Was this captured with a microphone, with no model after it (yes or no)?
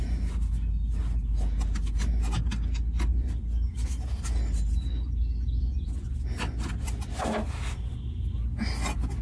yes